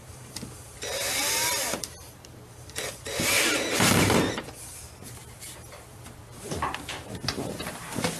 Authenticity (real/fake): fake